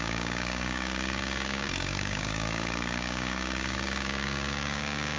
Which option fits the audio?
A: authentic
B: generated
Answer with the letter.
B